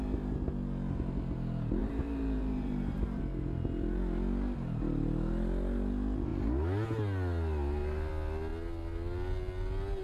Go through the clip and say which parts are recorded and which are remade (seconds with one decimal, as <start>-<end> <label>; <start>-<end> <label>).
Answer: 0.0-1.8 recorded; 1.8-3.2 remade; 3.2-10.0 recorded